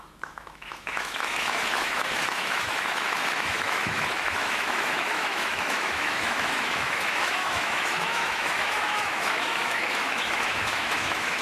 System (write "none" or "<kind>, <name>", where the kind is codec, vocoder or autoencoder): autoencoder, DAC-VAE